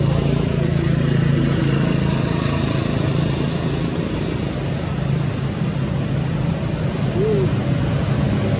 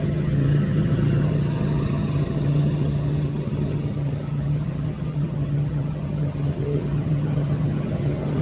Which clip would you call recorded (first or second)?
first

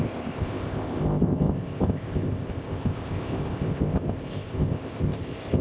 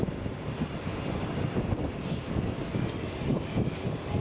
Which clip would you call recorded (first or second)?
second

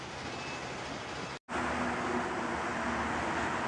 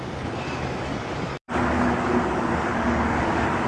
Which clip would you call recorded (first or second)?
first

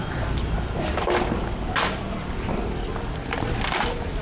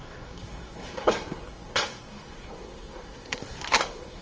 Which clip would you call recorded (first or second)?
first